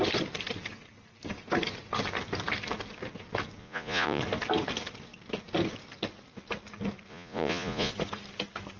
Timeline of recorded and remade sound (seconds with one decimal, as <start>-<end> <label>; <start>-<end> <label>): 0.0-3.6 recorded; 3.6-4.2 remade; 4.2-7.1 recorded; 7.1-7.9 remade; 7.9-8.8 recorded